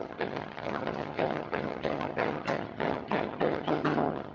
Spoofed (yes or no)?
yes